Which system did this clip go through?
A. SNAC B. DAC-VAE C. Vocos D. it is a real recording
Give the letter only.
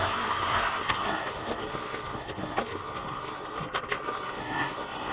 A